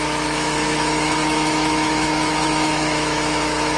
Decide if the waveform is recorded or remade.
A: remade